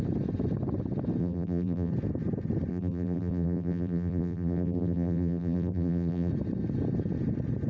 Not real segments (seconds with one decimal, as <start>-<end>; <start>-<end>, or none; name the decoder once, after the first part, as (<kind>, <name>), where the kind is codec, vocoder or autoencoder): 1.2-1.9 (vocoder, BigVGAN v2); 2.7-6.3